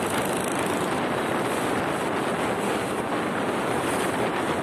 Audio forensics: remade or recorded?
recorded